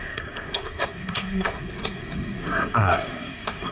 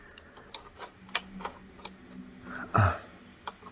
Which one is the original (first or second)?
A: second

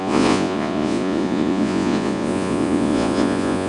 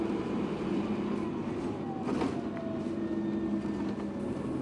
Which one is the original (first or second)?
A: second